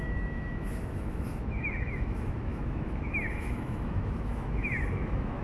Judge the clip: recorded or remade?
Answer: remade